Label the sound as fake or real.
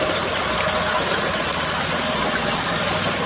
real